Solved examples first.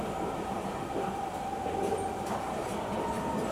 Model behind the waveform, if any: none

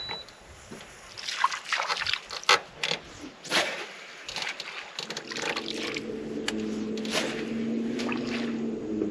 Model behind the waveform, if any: none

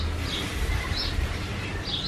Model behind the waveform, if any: none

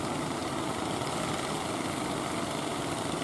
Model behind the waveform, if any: none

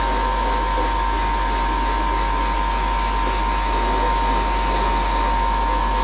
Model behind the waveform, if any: none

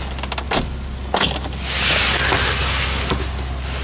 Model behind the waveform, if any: none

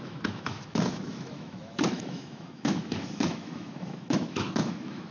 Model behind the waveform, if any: autoencoder, DAC-VAE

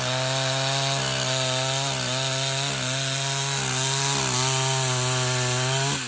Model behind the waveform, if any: none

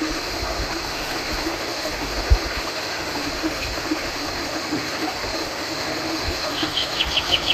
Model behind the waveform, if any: autoencoder, DAC-VAE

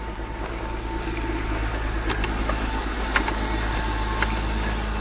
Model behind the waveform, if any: none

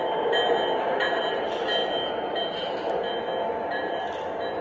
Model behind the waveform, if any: none